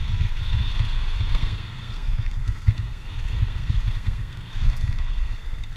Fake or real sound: fake